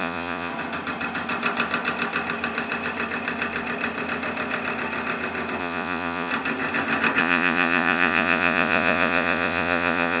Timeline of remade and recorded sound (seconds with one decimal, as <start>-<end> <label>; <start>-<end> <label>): 0.0-0.5 remade; 0.5-5.6 recorded; 5.6-6.3 remade; 6.3-7.2 recorded; 7.2-10.2 remade